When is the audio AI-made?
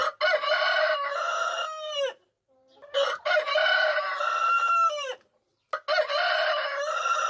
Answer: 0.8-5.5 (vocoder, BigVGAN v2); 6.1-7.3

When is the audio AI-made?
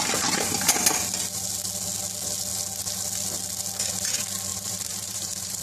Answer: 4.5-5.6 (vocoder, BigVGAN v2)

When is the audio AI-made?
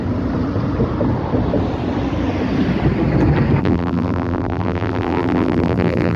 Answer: 3.6-6.2 (vocoder, BigVGAN v2)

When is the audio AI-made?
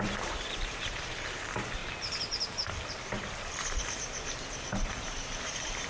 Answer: 0.0-1.8 (vocoder, BigVGAN v2); 2.9-5.9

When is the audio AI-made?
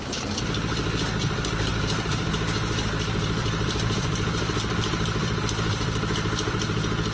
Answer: 1.7-2.3 (vocoder, BigVGAN v2); 3.4-5.4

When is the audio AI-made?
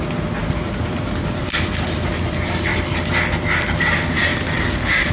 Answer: 0.4-2.6 (vocoder, BigVGAN v2)